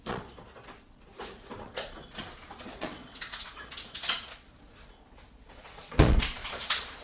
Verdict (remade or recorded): remade